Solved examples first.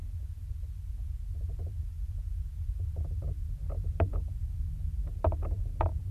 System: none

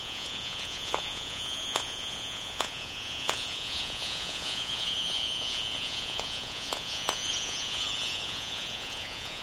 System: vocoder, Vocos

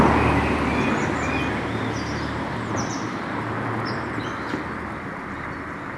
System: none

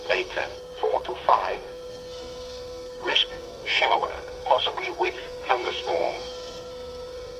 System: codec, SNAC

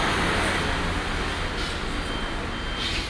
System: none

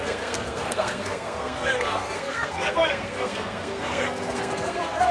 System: codec, SNAC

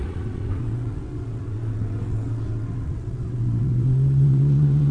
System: vocoder, WaveNeXt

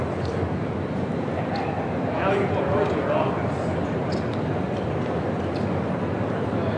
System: none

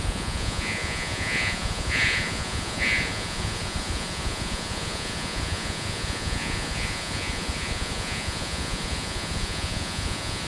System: vocoder, Vocos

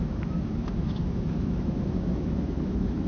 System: autoencoder, DAC-VAE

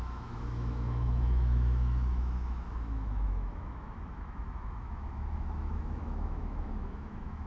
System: autoencoder, DAC-VAE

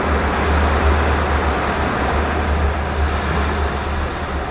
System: none